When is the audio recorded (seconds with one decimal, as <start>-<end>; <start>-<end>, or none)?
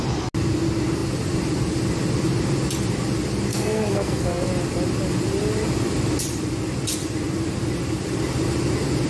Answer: 0.0-3.5; 4.5-9.1